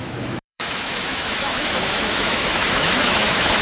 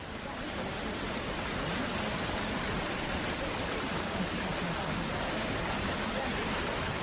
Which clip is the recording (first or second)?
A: second